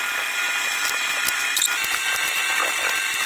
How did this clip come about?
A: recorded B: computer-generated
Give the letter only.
B